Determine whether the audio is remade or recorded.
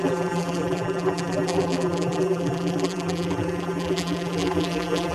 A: remade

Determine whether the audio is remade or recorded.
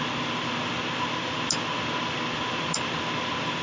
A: recorded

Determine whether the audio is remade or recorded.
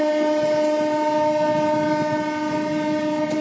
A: recorded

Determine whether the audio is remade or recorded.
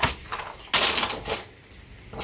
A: recorded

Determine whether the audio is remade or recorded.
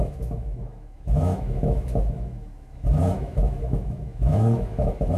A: remade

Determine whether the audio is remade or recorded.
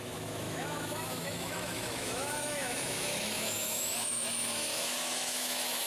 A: remade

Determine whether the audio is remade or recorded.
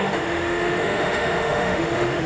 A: remade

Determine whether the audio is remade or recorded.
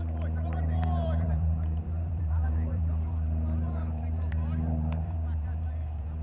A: remade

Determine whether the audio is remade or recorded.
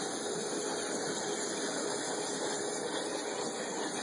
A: recorded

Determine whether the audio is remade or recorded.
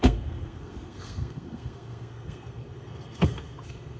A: remade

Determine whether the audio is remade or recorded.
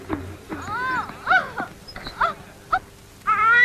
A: recorded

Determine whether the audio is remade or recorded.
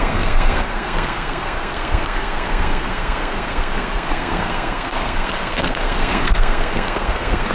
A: remade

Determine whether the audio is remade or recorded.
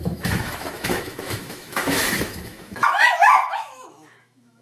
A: remade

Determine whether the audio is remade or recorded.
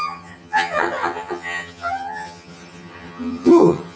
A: remade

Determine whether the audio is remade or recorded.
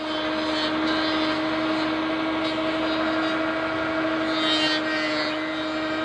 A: recorded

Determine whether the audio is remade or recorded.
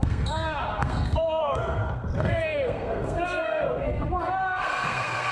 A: remade